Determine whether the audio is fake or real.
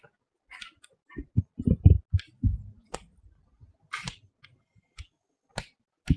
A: real